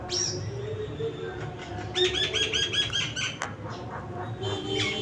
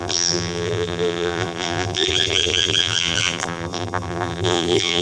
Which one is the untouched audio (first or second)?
first